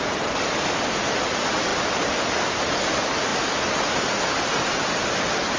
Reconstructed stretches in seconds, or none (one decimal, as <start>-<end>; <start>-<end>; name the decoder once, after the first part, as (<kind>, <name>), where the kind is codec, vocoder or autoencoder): none